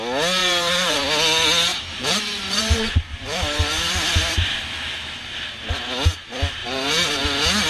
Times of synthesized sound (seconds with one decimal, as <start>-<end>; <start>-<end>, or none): 0.4-1.0; 1.7-4.6; 6.6-7.2